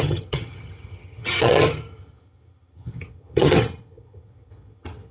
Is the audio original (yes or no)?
no